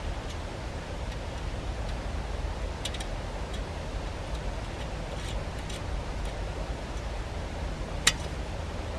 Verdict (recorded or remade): recorded